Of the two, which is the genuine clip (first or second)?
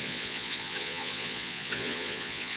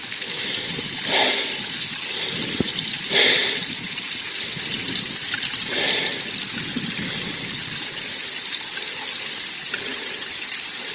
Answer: second